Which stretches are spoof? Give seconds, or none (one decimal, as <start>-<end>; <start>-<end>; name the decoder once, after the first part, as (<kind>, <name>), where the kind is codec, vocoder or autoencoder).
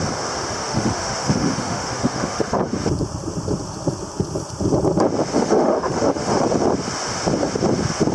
0.6-2.6 (autoencoder, DAC-VAE); 5.3-6.4